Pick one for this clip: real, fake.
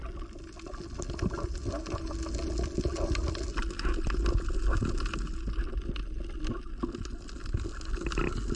real